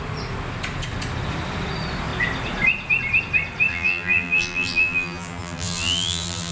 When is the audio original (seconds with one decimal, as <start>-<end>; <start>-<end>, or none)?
0.0-3.7